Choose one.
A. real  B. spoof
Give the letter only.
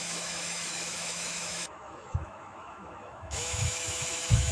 B